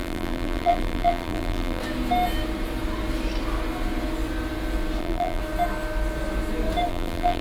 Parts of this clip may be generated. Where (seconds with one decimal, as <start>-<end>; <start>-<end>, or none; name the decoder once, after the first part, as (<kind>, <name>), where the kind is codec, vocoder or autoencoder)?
0.0-1.8 (vocoder, BigVGAN v2); 5.0-5.4; 6.9-7.4